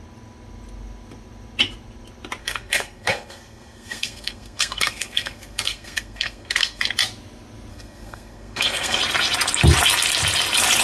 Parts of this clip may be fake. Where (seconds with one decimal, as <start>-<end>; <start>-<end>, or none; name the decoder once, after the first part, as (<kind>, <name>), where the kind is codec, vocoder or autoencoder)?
2.4-6.8 (codec, SNAC); 7.7-9.0